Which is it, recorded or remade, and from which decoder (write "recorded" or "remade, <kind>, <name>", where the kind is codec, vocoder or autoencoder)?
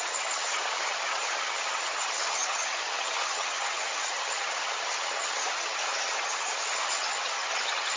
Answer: remade, vocoder, HiFi-GAN